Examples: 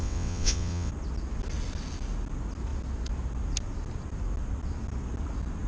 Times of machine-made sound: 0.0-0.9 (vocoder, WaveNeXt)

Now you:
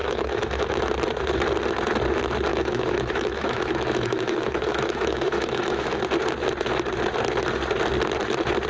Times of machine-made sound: 0.0-0.8 (autoencoder, DAC-VAE); 2.5-6.0

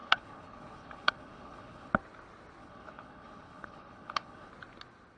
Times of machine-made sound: 0.0-1.9 (codec, HILCodec); 2.6-4.5

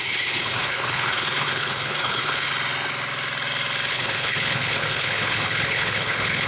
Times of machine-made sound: 0.0-2.5 (codec, HILCodec); 3.9-6.5

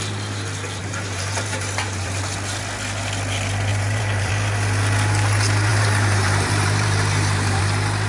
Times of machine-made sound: 0.8-2.2 (vocoder, BigVGAN v2); 3.7-4.3; 5.7-7.6

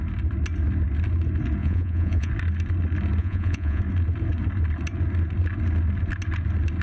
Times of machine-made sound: 1.6-2.3 (vocoder, Vocos); 3.2-3.8